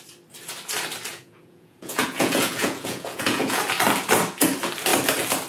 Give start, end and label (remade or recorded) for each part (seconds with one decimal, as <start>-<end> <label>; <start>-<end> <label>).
0.0-1.1 recorded; 1.1-3.6 remade; 3.6-5.5 recorded